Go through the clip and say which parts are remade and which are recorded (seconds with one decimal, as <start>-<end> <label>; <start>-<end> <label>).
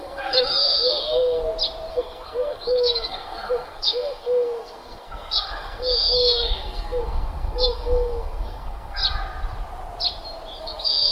0.0-1.4 remade; 1.4-1.9 recorded; 1.9-9.0 remade; 9.0-10.6 recorded; 10.6-11.1 remade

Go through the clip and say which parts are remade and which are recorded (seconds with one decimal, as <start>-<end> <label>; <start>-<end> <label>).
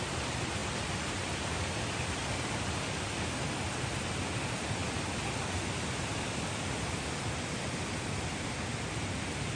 0.0-9.6 recorded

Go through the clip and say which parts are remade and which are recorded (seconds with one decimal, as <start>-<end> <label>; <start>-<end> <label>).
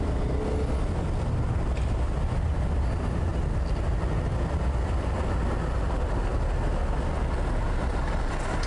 0.0-8.7 recorded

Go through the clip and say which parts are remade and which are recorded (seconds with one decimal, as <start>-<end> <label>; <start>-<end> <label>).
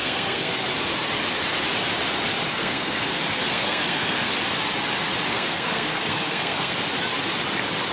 0.0-0.6 remade; 0.6-2.5 recorded; 2.5-4.3 remade; 4.3-5.3 recorded; 5.3-6.9 remade; 6.9-7.9 recorded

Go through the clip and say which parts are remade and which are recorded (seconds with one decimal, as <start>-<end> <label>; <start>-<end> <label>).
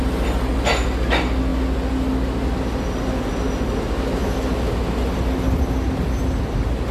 0.0-6.9 recorded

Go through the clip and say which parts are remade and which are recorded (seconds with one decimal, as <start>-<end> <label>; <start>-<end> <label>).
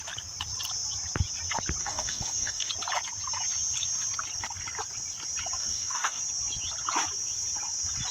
0.0-1.8 recorded; 1.8-2.7 remade; 2.7-5.6 recorded; 5.6-6.2 remade; 6.2-8.1 recorded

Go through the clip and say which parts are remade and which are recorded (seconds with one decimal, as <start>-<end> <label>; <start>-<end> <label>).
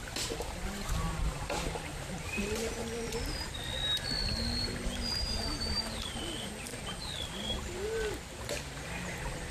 0.0-6.7 recorded; 6.7-8.8 remade; 8.8-9.5 recorded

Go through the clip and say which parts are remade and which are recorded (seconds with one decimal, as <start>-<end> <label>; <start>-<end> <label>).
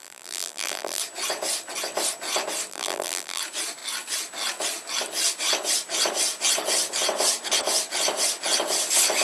0.0-1.0 remade; 1.0-2.7 recorded; 2.7-3.4 remade; 3.4-9.2 recorded